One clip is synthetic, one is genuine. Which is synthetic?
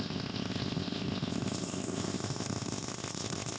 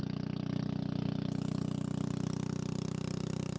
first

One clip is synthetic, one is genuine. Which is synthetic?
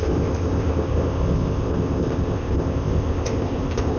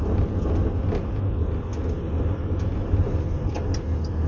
first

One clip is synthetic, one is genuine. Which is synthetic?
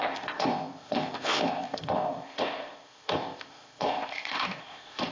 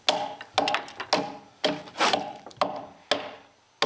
first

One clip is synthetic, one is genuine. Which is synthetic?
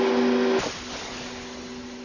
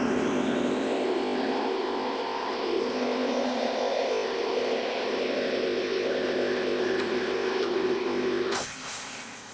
second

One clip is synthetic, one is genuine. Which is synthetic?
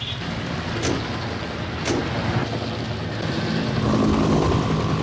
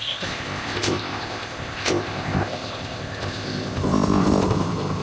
second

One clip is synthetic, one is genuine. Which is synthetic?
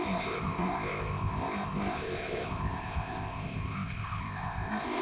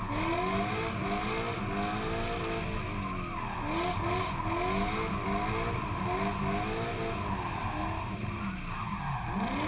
first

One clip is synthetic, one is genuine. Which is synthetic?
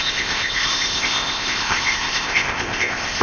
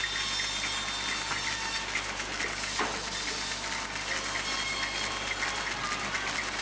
first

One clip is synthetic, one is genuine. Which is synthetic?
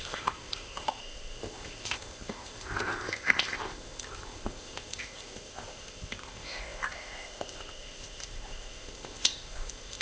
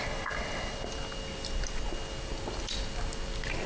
first